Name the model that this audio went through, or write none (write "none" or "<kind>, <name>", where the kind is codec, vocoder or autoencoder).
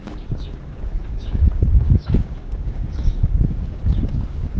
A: codec, DAC